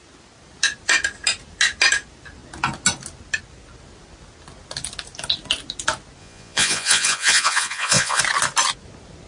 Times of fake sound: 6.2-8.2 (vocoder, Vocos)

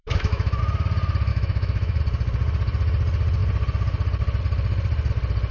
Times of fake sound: 0.0-0.6 (autoencoder, DAC-VAE); 1.3-2.0

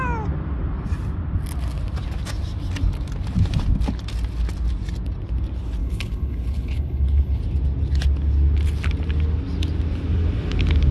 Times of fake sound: 5.8-7.4 (codec, HILCodec)